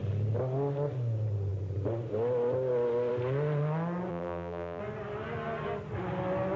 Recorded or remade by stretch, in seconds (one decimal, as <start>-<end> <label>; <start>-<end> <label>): 0.0-4.1 recorded; 4.1-4.8 remade; 4.8-6.6 recorded